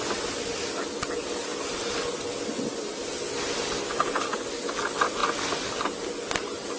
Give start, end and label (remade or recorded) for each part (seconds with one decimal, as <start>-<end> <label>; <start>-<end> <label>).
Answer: 0.0-6.8 recorded